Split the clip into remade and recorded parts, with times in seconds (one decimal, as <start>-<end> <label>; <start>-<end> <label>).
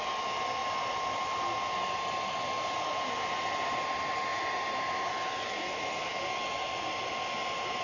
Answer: 0.0-4.3 recorded; 4.3-5.1 remade; 5.1-7.8 recorded